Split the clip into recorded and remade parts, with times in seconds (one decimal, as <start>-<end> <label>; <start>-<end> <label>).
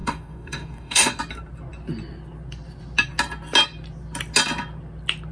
0.0-1.2 remade; 1.2-5.3 recorded